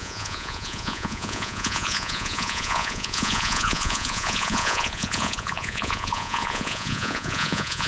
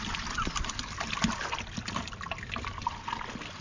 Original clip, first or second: second